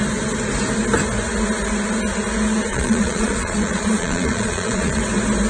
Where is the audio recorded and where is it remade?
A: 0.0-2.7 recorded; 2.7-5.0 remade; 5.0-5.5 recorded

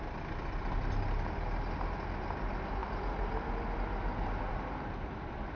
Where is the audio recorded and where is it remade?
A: 0.0-5.6 recorded

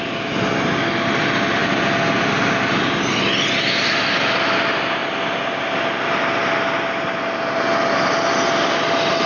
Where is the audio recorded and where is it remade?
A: 0.0-9.3 recorded

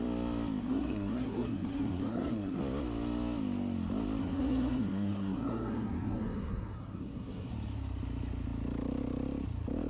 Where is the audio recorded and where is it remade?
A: 0.0-0.6 recorded; 0.6-2.6 remade; 2.6-4.2 recorded; 4.2-7.5 remade; 7.5-9.9 recorded